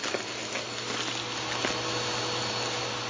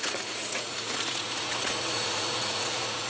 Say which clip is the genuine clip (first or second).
first